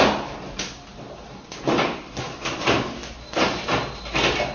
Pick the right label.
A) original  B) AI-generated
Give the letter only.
A